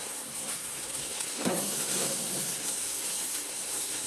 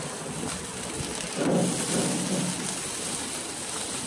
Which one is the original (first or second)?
second